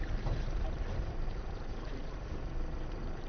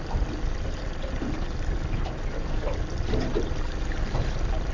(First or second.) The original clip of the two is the second